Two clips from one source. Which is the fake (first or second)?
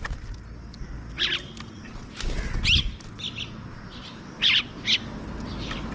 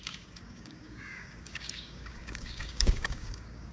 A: second